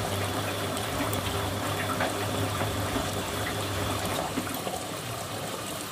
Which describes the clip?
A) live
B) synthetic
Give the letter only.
B